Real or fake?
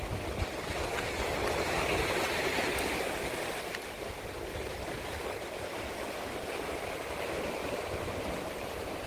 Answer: real